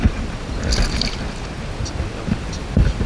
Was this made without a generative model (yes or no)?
yes